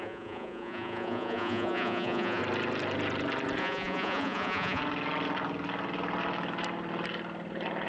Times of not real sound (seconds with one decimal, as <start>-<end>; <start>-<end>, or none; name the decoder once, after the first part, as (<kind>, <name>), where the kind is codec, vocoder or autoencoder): 0.0-2.4 (vocoder, Vocos); 3.6-4.8